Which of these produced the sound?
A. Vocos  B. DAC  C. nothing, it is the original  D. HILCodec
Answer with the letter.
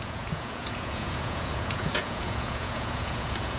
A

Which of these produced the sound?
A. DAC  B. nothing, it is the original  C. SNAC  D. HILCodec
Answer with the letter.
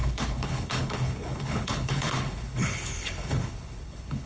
D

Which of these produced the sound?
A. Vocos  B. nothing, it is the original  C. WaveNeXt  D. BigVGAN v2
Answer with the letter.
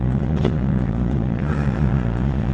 A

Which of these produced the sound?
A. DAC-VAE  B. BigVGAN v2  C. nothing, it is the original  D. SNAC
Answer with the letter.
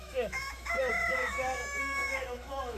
A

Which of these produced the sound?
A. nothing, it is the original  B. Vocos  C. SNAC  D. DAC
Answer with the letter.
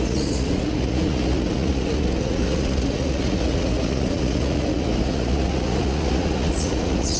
B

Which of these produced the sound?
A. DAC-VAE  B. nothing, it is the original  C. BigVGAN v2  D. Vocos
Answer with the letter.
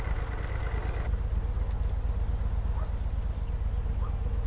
B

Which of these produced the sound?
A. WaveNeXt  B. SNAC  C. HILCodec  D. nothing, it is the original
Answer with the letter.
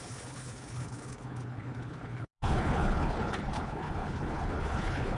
C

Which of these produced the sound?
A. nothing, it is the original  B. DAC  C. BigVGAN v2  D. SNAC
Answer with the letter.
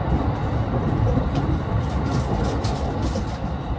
C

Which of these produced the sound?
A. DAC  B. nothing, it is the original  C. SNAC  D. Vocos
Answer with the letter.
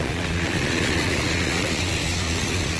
D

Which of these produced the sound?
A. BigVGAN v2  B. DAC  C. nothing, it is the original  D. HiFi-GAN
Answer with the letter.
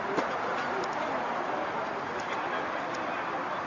C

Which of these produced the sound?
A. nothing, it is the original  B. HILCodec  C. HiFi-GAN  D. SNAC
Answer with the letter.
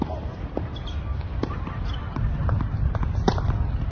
A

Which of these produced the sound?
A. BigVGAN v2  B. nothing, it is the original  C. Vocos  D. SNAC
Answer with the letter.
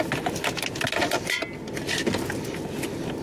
B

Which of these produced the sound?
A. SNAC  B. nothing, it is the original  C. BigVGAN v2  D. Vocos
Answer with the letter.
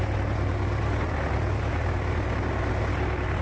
B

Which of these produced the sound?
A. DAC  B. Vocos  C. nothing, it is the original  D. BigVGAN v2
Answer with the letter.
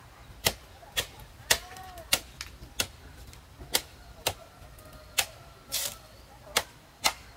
C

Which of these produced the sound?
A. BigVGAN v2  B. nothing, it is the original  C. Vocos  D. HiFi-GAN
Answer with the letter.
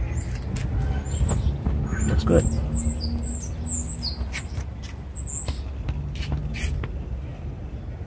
B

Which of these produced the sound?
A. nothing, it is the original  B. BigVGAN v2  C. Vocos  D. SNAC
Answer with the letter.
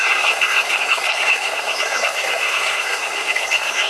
D